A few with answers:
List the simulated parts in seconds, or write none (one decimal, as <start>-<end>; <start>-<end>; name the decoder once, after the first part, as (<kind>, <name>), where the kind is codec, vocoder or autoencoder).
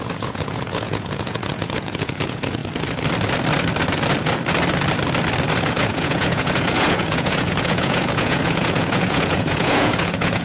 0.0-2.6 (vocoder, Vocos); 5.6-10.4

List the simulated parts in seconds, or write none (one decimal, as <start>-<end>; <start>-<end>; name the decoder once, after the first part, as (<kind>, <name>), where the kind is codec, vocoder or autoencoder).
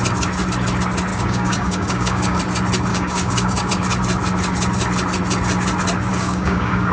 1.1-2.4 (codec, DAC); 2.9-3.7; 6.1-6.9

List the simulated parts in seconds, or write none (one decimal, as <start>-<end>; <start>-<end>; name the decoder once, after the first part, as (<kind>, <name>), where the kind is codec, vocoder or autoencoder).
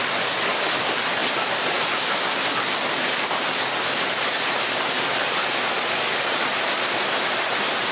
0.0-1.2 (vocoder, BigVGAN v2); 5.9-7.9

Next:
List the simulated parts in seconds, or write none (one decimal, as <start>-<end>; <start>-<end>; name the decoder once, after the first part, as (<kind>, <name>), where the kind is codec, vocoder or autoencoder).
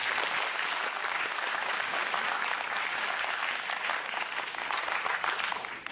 none